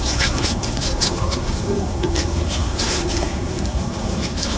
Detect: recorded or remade remade